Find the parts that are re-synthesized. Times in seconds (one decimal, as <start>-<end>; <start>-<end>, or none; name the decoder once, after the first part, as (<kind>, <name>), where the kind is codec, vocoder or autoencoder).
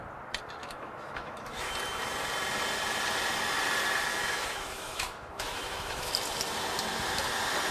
0.6-1.7 (autoencoder, DAC-VAE); 4.1-6.1